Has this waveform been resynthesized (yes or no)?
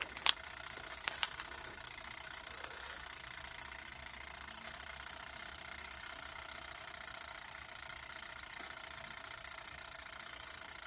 no